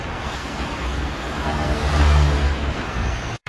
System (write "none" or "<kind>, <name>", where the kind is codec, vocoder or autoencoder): codec, SNAC